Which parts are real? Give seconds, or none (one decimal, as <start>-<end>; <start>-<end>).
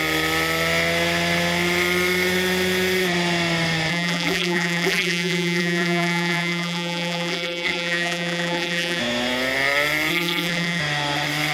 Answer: 0.0-3.9; 9.0-10.1; 10.8-11.5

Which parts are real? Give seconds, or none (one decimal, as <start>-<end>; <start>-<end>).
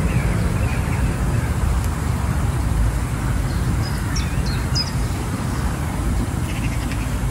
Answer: none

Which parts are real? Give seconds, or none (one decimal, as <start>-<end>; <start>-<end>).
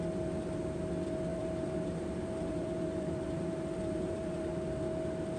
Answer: 0.0-1.3; 4.5-5.4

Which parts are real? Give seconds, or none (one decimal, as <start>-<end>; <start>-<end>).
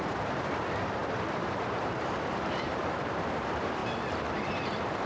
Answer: 3.8-4.3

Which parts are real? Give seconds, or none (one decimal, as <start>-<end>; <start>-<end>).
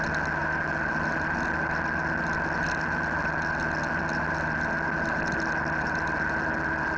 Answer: 0.0-7.0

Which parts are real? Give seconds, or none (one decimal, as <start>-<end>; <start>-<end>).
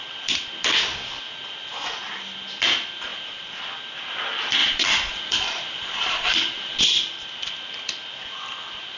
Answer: 0.0-3.1; 3.7-4.6; 6.8-9.0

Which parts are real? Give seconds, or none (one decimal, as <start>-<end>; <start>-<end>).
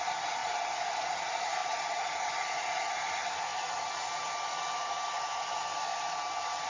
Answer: 1.6-2.9; 3.5-5.1; 5.9-6.7